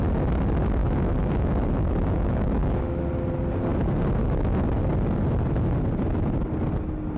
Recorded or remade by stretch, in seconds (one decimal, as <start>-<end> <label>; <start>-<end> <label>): 0.0-0.8 recorded; 0.8-3.0 remade; 3.0-7.2 recorded